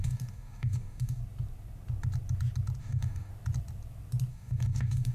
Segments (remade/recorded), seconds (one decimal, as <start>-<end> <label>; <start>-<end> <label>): 0.0-1.2 remade; 1.2-2.8 recorded; 2.8-3.3 remade; 3.3-4.3 recorded; 4.3-5.1 remade